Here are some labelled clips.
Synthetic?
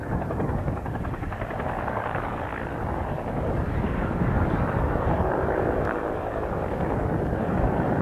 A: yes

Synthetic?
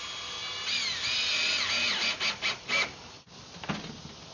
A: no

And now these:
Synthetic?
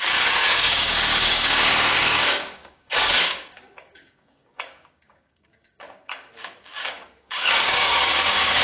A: yes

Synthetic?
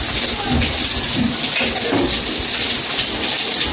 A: no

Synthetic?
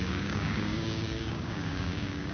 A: yes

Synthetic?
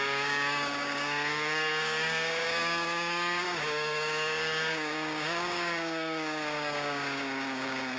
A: yes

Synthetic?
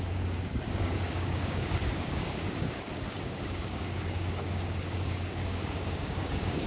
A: yes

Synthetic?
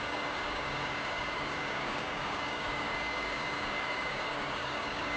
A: yes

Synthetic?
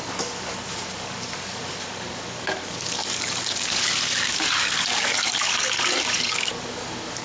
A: yes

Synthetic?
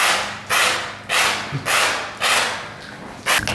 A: no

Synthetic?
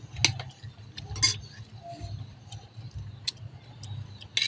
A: no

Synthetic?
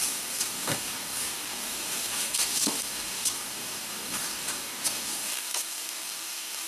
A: yes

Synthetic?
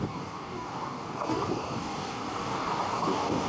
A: yes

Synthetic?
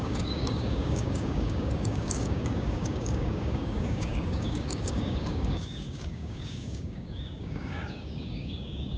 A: yes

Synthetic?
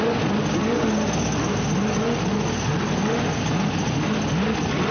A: no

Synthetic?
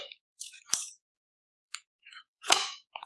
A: yes